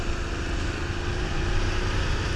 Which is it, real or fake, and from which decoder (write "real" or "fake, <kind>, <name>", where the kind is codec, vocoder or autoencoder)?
real